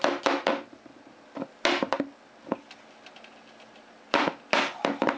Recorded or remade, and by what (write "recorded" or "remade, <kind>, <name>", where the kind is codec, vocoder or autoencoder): recorded